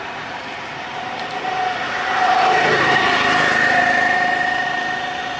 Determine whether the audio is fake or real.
real